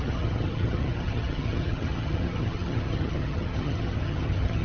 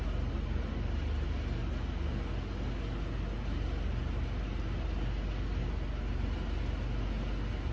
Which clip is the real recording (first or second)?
second